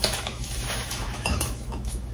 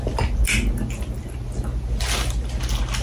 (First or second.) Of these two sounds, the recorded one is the second